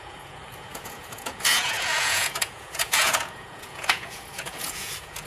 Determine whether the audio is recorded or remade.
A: remade